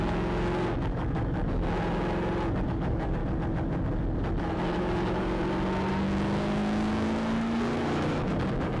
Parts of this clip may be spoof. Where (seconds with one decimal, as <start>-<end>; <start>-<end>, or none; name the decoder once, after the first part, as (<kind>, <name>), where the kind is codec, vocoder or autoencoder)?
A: 0.0-1.4 (codec, DAC); 2.7-3.2; 4.4-5.4; 5.9-8.8